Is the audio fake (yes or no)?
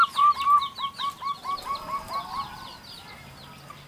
no